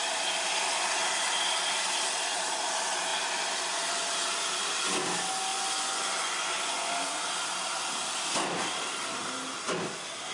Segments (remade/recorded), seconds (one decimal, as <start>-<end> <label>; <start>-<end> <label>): 0.0-5.5 recorded; 5.5-6.9 remade; 6.9-10.3 recorded